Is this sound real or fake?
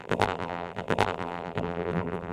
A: fake